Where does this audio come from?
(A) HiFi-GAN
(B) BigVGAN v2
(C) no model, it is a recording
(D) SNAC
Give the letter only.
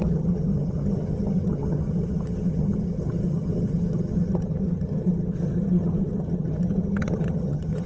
A